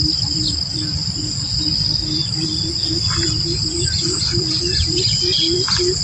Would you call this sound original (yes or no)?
yes